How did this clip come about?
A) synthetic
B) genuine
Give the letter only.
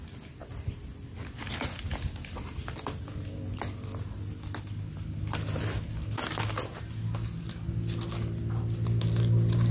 B